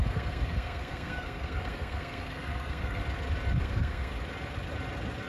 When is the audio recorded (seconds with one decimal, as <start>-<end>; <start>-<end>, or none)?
3.0-3.6; 4.1-5.3